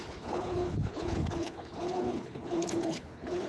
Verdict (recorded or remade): remade